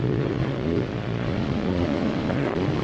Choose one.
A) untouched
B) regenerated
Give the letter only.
B